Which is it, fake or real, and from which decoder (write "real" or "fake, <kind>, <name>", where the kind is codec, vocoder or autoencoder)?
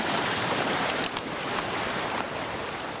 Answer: fake, vocoder, BigVGAN v2